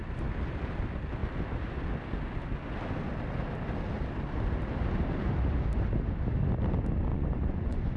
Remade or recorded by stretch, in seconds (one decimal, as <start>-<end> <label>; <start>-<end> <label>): 0.0-7.1 recorded; 7.1-8.0 remade